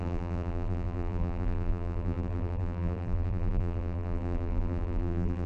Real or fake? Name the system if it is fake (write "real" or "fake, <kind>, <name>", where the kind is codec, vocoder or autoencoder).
fake, vocoder, BigVGAN v2